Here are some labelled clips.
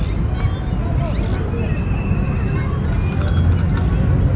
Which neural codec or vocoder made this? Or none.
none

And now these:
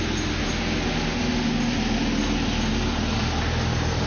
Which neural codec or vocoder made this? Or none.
none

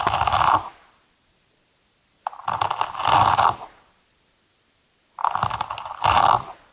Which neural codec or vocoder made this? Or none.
none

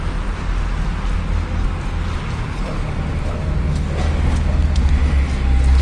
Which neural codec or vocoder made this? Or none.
none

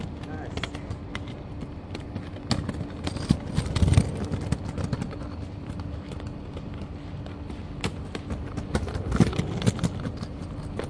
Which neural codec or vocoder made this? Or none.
none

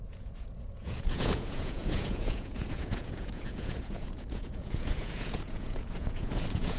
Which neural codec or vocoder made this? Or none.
vocoder, Vocos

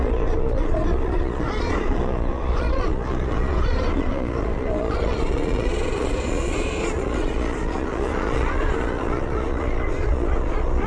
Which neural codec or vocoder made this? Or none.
vocoder, Vocos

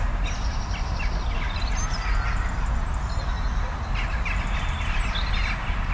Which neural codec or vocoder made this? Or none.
none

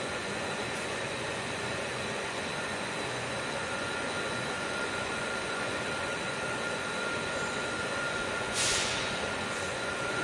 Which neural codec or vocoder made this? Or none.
vocoder, Vocos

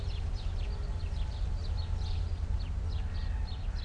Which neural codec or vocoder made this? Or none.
none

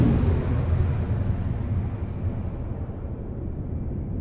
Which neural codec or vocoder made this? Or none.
none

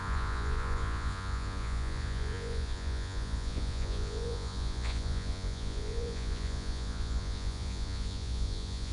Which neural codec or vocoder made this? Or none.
vocoder, Vocos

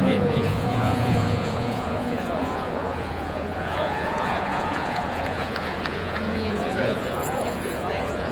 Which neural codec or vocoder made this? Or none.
vocoder, Vocos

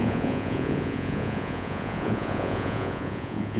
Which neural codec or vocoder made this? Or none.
vocoder, Vocos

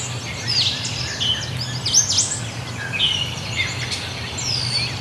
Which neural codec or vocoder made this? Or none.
none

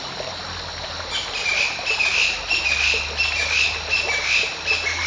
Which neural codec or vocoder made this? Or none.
none